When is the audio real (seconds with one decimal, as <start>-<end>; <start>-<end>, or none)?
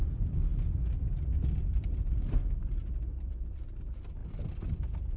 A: 0.0-3.1; 3.8-5.2